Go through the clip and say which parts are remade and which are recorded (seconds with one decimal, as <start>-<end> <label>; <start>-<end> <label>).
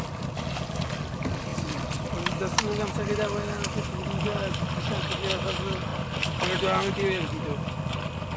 0.0-8.4 recorded